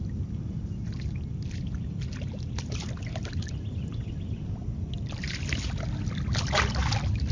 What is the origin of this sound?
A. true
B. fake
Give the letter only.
A